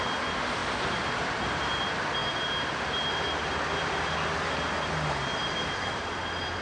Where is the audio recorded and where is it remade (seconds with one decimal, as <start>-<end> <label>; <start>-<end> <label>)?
0.0-6.6 remade